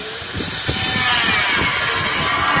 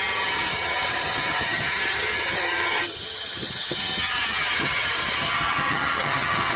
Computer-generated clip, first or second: second